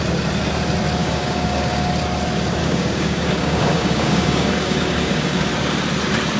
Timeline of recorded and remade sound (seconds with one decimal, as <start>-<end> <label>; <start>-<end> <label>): 0.0-1.0 recorded; 1.0-1.9 remade; 1.9-2.6 recorded; 2.6-5.5 remade; 5.5-6.4 recorded